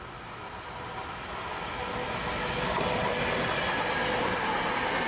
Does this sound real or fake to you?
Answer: real